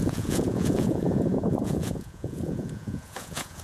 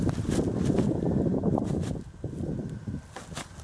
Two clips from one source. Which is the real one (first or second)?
second